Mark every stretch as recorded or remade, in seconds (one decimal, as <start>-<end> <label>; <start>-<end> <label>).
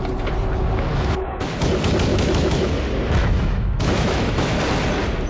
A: 0.0-0.9 recorded; 0.9-1.5 remade; 1.5-2.1 recorded; 2.1-2.7 remade; 2.7-3.2 recorded; 3.2-4.6 remade; 4.6-5.3 recorded